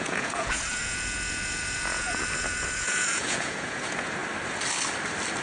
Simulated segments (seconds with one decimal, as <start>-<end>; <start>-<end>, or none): 0.0-4.2